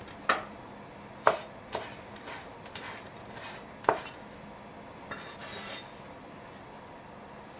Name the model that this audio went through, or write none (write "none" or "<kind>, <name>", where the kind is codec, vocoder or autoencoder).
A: none